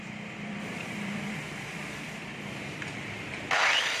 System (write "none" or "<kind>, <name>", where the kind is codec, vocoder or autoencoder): vocoder, BigVGAN v2